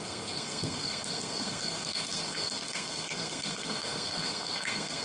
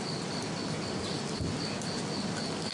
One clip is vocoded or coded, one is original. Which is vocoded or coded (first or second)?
first